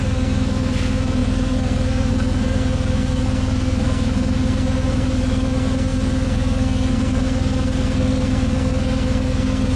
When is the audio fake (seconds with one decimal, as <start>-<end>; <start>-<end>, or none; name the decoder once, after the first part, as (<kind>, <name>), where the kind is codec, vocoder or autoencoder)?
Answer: 0.0-9.8 (codec, SNAC)